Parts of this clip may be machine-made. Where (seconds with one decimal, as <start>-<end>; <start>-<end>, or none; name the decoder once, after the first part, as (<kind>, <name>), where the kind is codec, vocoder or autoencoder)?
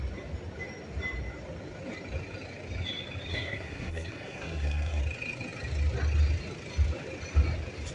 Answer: 3.3-5.0 (codec, SNAC)